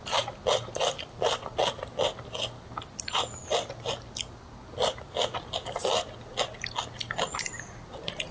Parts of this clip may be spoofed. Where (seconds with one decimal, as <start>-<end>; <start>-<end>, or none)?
none